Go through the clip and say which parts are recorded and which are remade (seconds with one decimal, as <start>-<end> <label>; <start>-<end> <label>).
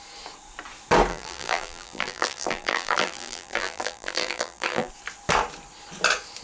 0.0-1.1 recorded; 1.1-4.9 remade; 4.9-6.4 recorded